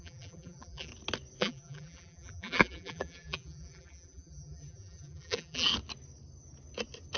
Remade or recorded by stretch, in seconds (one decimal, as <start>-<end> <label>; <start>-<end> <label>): 0.0-0.9 remade; 0.9-1.4 recorded; 1.4-5.7 remade; 5.7-7.2 recorded